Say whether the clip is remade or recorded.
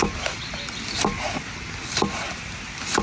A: recorded